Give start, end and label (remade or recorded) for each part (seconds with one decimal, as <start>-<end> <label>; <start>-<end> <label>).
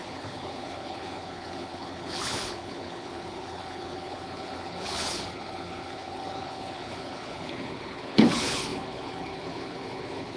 0.0-10.4 remade